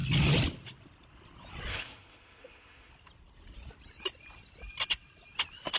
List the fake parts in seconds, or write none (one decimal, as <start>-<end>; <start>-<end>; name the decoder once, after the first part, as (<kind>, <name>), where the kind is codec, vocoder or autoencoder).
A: 1.7-2.9 (autoencoder, DAC-VAE)